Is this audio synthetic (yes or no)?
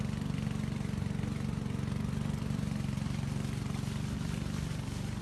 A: no